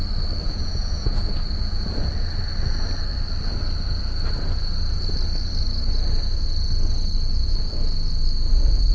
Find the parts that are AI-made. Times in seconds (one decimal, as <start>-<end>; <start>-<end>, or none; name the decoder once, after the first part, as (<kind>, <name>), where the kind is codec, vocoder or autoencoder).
0.4-1.3 (vocoder, Vocos)